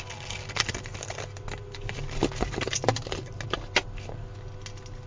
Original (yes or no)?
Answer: yes